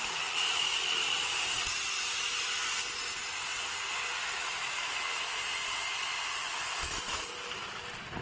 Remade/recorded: recorded